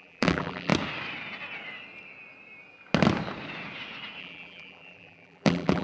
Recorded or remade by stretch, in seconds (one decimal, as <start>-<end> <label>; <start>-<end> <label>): 0.0-0.7 remade; 0.7-4.2 recorded; 4.2-5.8 remade